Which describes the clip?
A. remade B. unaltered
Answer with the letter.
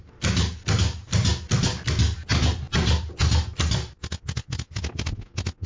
B